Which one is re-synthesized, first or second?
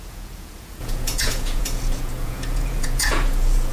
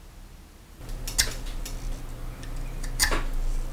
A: first